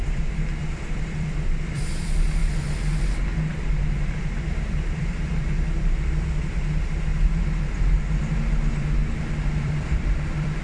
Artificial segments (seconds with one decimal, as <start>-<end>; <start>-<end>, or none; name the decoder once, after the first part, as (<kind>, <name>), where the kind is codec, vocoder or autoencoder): 0.0-2.4 (vocoder, BigVGAN v2); 3.0-7.1; 9.1-10.6